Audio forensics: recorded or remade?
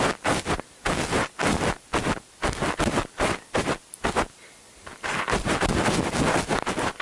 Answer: recorded